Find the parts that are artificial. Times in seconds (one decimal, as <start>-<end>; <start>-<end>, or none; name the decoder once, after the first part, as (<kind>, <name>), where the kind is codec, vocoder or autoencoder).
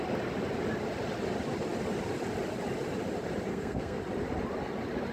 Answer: 3.5-4.0 (codec, SNAC)